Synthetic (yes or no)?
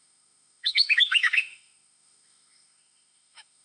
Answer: yes